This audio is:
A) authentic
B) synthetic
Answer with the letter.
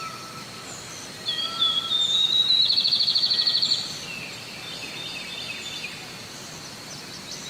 A